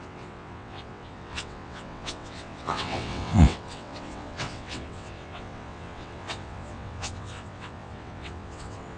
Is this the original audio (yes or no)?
no